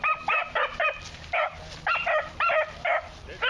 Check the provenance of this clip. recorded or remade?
recorded